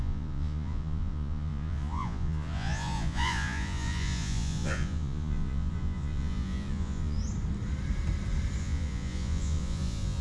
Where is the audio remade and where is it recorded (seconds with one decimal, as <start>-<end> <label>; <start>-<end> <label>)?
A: 0.0-7.2 remade; 7.2-8.6 recorded; 8.6-10.2 remade

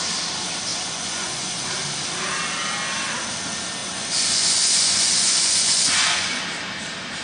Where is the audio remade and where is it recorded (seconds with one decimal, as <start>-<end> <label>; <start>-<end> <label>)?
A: 0.0-0.7 recorded; 0.7-1.7 remade; 1.7-3.8 recorded; 3.8-6.4 remade; 6.4-7.2 recorded

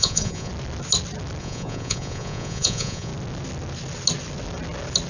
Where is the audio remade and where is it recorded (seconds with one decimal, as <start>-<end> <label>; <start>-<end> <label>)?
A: 0.0-0.5 remade; 0.5-1.4 recorded; 1.4-3.1 remade; 3.1-5.1 recorded